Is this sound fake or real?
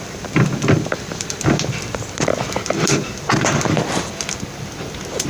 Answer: fake